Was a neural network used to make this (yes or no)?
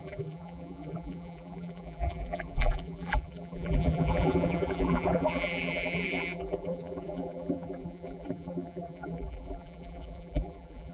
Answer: yes